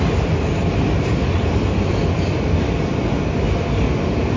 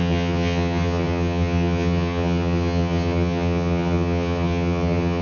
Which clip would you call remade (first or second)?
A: second